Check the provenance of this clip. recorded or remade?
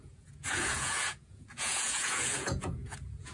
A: remade